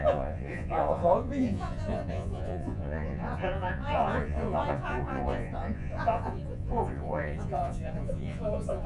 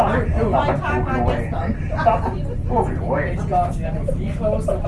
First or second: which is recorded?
second